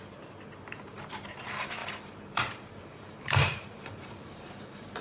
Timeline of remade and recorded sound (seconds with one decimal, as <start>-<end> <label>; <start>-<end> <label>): 0.0-1.8 recorded; 1.8-5.0 remade